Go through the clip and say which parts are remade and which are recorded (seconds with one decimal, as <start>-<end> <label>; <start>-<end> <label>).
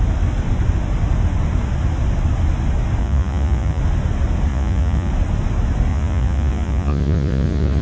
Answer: 0.0-3.0 recorded; 3.0-3.8 remade; 3.8-4.5 recorded; 4.5-5.1 remade; 5.1-5.9 recorded; 5.9-7.8 remade